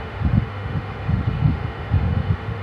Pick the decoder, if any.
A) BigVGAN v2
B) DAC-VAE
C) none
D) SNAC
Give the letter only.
B